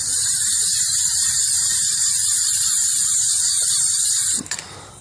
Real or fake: fake